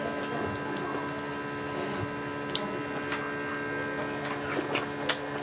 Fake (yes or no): no